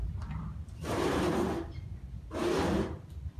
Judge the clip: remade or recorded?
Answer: recorded